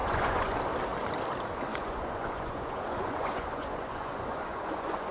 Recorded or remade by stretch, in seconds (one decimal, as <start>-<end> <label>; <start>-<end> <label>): 0.0-0.6 remade; 0.6-1.7 recorded; 1.7-5.1 remade